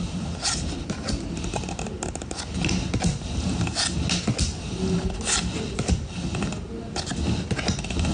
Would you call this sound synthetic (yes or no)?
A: no